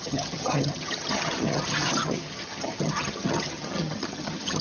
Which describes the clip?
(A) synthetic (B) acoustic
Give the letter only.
A